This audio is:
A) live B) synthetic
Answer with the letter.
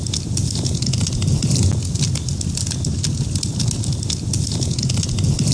A